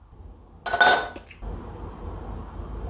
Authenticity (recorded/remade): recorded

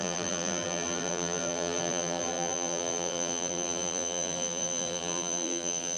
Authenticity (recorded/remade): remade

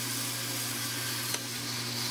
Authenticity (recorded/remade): recorded